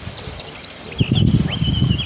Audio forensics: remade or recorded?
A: recorded